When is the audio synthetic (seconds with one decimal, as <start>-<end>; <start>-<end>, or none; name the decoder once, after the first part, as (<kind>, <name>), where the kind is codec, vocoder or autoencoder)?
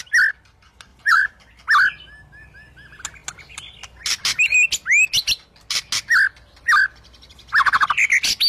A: 0.9-1.5 (vocoder, BigVGAN v2)